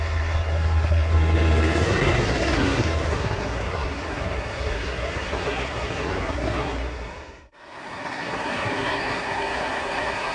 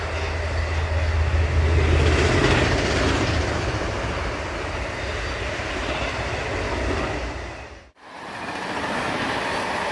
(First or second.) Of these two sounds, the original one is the second